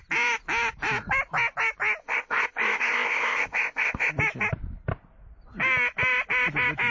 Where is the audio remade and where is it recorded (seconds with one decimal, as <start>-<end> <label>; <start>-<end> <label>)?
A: 0.0-2.0 recorded; 2.0-4.1 remade; 4.1-6.9 recorded